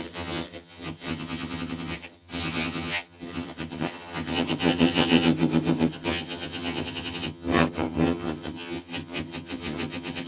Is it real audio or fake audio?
fake